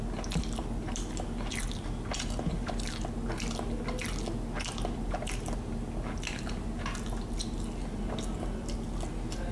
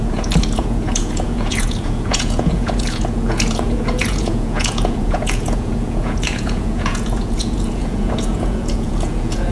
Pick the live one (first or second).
first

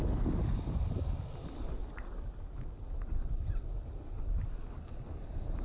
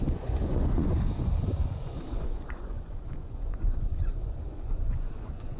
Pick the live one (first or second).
first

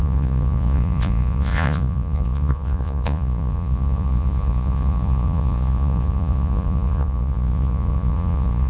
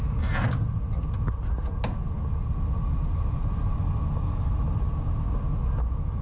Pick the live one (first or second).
second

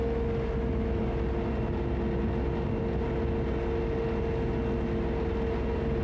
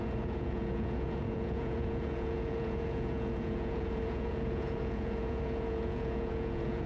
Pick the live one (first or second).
first